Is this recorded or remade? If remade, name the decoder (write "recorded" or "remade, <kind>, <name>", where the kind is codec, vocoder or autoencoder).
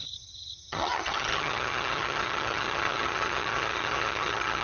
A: remade, vocoder, HiFi-GAN